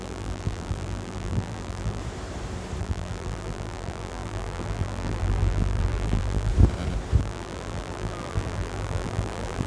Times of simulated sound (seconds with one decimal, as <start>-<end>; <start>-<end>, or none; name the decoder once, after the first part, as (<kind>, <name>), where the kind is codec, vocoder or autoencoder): 0.0-2.0 (vocoder, BigVGAN v2); 2.8-6.5; 7.2-9.7